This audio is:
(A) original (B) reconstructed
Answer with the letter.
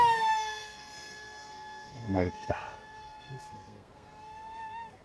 B